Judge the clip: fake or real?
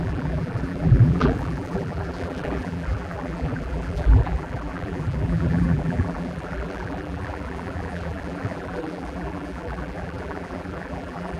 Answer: fake